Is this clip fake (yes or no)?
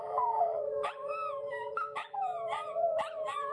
yes